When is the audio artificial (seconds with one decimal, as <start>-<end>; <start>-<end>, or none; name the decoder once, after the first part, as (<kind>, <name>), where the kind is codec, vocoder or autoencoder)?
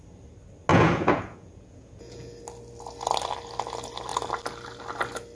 0.7-2.4 (vocoder, Vocos)